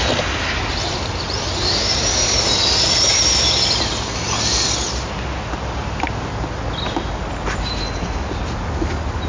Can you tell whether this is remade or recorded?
recorded